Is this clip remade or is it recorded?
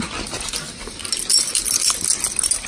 recorded